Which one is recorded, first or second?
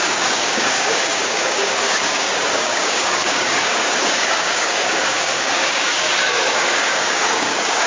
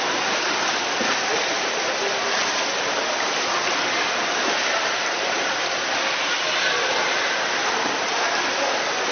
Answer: second